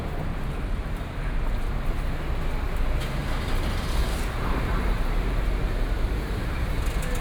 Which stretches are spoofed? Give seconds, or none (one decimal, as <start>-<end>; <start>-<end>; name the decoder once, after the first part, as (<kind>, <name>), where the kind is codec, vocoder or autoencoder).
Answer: 3.2-6.7 (vocoder, BigVGAN v2)